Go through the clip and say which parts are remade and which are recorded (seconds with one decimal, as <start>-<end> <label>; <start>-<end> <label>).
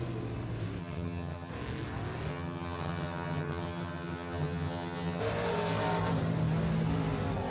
0.0-0.8 recorded; 0.8-1.5 remade; 1.5-2.3 recorded; 2.3-5.2 remade; 5.2-7.5 recorded